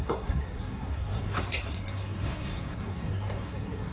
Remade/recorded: remade